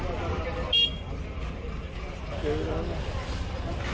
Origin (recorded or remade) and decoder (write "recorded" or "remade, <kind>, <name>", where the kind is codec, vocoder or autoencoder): recorded